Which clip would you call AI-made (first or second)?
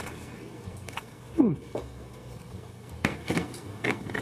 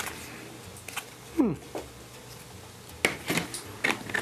first